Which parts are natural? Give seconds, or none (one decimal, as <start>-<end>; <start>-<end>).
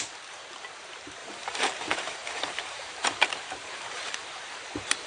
0.0-1.2; 4.3-5.1